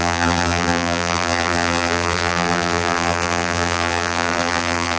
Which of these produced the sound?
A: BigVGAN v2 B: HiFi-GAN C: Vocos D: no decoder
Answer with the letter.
A